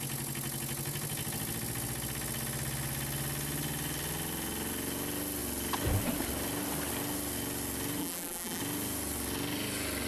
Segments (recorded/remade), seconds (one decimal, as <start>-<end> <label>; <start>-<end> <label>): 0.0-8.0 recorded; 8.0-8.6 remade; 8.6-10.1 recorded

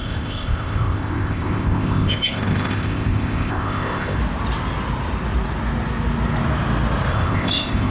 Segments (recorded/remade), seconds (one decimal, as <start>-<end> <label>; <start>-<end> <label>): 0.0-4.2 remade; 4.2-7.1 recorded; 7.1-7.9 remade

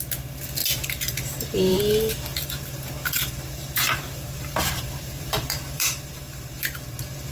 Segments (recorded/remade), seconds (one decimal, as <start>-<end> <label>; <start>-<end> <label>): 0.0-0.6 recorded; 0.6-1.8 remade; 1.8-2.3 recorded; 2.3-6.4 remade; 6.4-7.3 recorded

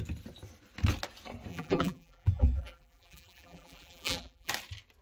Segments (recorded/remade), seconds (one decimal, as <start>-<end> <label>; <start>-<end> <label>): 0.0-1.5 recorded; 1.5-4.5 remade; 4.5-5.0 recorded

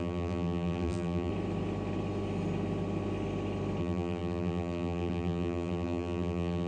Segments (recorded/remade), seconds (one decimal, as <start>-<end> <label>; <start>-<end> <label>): 0.0-1.3 remade; 1.3-3.8 recorded; 3.8-6.7 remade

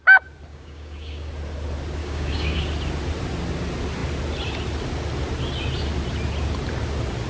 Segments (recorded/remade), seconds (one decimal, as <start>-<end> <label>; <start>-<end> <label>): 0.0-0.5 recorded; 0.5-1.3 remade; 1.3-2.0 recorded; 2.0-2.6 remade; 2.6-7.3 recorded